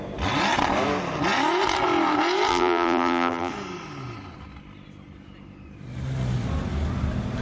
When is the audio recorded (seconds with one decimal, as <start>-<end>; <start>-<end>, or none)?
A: 0.0-2.5; 3.5-7.4